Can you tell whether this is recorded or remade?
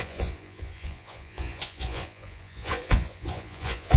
remade